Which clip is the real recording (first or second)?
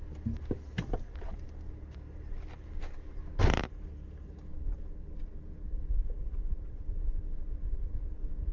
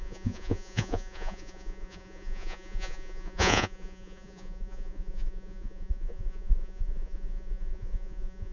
first